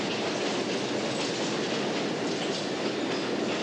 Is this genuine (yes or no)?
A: yes